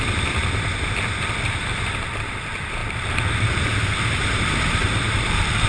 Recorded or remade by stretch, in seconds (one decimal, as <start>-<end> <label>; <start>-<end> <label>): 0.0-2.8 recorded; 2.8-5.7 remade